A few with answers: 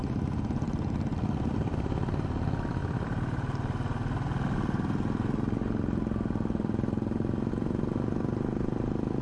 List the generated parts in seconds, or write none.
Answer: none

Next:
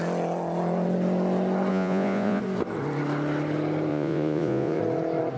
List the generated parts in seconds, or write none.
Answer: 1.7-2.4 (vocoder, Vocos); 3.9-4.8

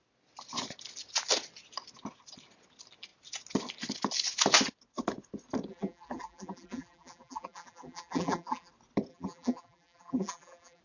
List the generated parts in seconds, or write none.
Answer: 5.7-8.7 (vocoder, BigVGAN v2); 9.1-10.8

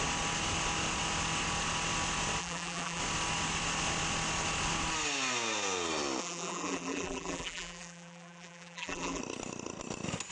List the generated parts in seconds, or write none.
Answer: 2.4-3.0 (vocoder, BigVGAN v2); 6.2-9.2

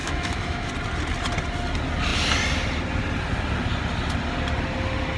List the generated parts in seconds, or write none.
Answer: 0.0-0.7 (autoencoder, DAC-VAE)